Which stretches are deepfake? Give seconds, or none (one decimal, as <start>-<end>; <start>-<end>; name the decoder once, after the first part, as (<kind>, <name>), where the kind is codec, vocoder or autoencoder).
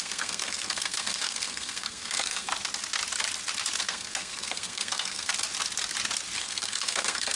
0.0-2.5 (codec, SNAC); 3.8-5.3; 6.4-7.4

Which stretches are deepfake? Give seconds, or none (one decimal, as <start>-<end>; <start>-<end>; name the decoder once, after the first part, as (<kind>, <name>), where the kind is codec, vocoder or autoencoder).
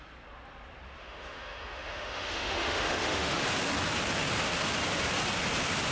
1.0-3.4 (autoencoder, DAC-VAE)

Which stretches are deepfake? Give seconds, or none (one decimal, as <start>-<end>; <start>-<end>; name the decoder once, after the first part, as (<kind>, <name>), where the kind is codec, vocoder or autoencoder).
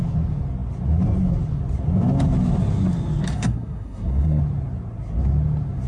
3.3-4.4 (codec, SNAC)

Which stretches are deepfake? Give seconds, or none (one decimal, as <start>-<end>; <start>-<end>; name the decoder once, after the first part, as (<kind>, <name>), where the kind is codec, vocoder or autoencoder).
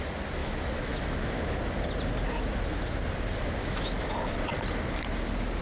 0.4-1.6 (autoencoder, DAC-VAE); 3.6-4.1